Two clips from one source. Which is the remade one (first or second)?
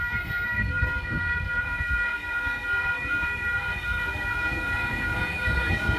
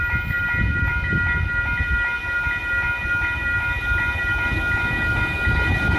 first